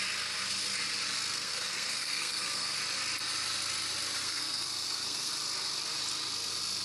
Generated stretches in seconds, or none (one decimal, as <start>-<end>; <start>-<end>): 1.3-2.8; 4.2-5.3